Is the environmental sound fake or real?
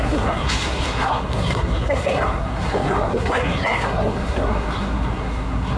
fake